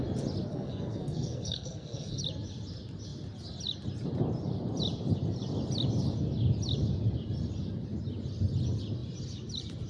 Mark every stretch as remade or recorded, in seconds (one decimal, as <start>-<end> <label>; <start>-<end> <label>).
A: 0.0-0.5 recorded; 0.5-2.2 remade; 2.2-9.9 recorded